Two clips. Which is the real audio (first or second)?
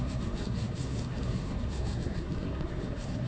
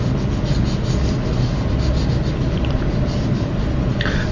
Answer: second